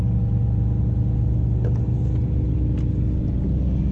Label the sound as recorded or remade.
recorded